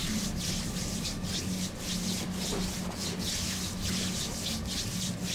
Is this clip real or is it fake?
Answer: fake